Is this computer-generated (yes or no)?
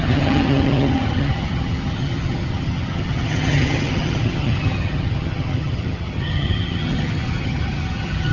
yes